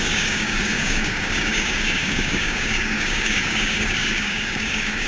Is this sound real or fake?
fake